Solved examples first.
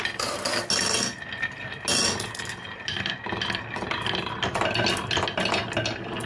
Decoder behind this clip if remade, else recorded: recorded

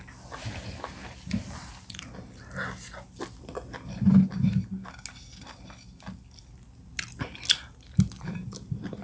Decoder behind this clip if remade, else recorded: recorded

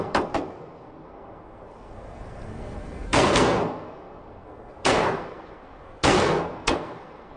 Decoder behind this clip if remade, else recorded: remade, codec, SNAC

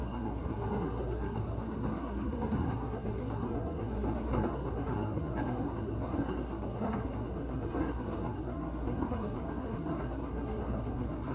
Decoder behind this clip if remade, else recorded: remade, codec, SNAC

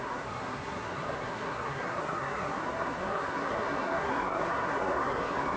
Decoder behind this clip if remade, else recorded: remade, codec, SNAC